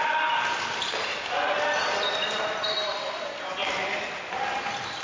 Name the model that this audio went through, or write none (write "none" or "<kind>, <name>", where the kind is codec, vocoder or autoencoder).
none